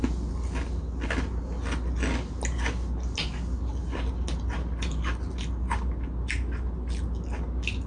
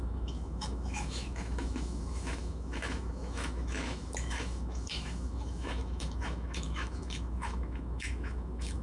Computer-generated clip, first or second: second